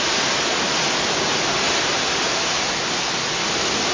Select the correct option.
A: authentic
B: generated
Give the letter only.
A